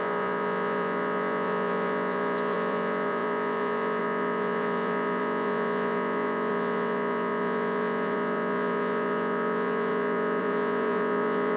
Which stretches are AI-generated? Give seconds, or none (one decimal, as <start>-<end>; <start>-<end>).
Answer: 0.0-11.6